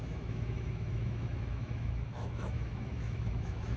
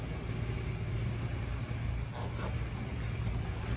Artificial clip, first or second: first